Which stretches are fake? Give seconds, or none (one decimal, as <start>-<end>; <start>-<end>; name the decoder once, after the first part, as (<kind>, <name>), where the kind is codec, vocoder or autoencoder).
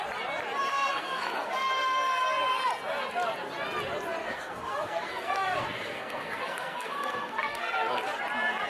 0.7-2.6 (codec, SNAC); 4.2-8.2